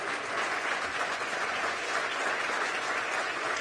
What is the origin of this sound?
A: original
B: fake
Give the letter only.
B